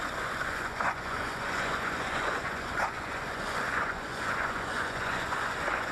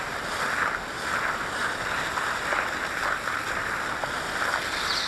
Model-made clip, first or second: first